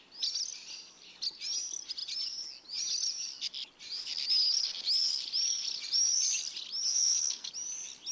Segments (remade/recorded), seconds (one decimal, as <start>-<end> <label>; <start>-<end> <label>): 0.0-6.9 recorded; 6.9-7.5 remade; 7.5-8.1 recorded